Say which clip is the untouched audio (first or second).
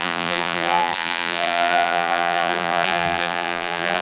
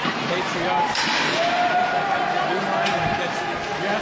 second